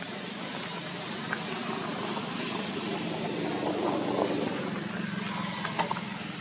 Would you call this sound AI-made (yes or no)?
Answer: no